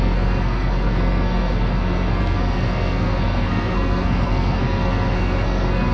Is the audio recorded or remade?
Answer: remade